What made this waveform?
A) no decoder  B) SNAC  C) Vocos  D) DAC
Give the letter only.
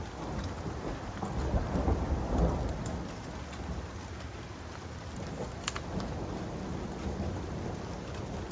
A